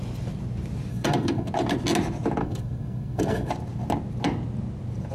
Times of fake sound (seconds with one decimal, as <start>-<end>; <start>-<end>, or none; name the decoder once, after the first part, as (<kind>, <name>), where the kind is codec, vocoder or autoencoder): 0.9-1.5 (codec, SNAC); 2.4-3.5